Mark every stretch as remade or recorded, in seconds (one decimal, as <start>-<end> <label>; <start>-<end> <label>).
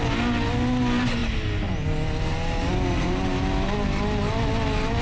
0.0-5.0 recorded